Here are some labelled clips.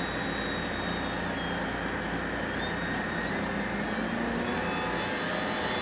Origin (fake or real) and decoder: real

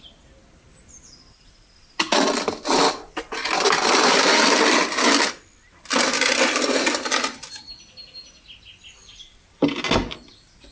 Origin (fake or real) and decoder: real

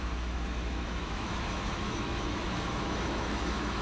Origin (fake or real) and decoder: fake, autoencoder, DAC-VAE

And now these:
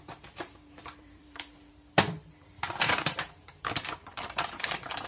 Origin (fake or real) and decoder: fake, vocoder, BigVGAN v2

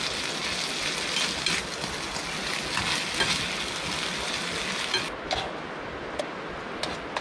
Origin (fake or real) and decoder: real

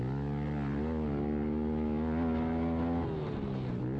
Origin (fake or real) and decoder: real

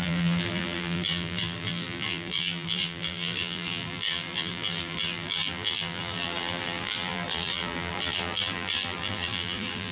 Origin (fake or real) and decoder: fake, vocoder, BigVGAN v2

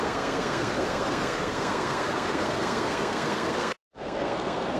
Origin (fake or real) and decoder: fake, codec, SNAC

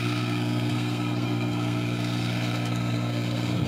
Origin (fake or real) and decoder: fake, codec, SNAC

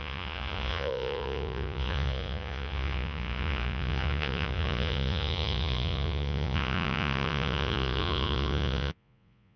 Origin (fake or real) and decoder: fake, vocoder, Vocos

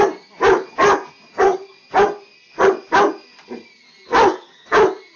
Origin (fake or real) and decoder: real